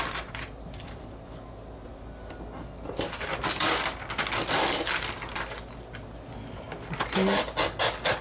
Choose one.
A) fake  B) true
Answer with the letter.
B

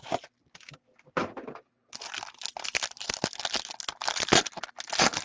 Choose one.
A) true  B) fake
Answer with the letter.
A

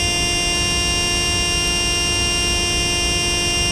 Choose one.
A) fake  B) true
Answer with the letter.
B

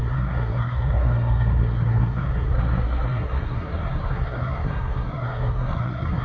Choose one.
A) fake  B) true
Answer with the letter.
A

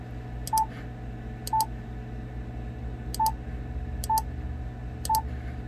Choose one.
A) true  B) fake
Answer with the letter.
A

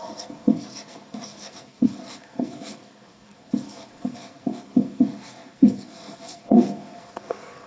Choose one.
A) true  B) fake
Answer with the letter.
B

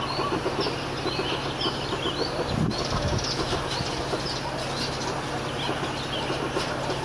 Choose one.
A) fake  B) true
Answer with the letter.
B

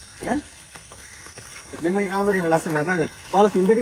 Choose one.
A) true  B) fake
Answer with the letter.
B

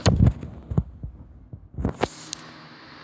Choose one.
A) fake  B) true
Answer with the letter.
B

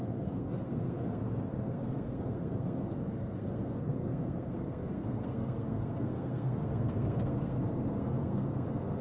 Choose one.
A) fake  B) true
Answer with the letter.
A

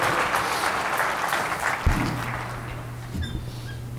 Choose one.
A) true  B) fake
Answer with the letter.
A